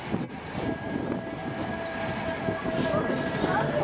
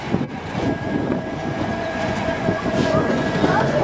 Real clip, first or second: first